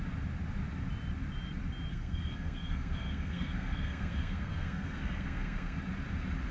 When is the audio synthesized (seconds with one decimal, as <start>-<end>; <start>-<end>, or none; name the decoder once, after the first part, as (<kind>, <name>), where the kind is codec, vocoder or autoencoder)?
1.9-5.8 (codec, SNAC)